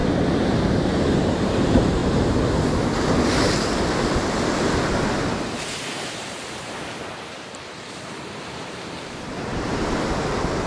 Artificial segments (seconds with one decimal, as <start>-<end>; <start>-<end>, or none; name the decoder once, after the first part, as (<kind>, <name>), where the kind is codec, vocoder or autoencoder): 1.1-2.0 (vocoder, BigVGAN v2); 5.2-10.7